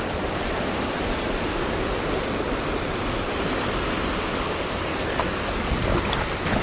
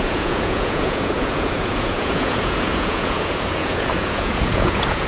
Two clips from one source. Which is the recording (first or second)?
first